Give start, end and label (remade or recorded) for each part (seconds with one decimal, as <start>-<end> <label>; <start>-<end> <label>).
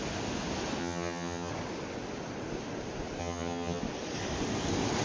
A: 0.0-0.8 recorded; 0.8-1.5 remade; 1.5-3.2 recorded; 3.2-3.8 remade; 3.8-5.0 recorded